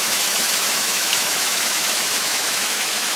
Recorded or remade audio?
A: remade